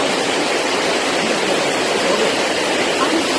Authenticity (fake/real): fake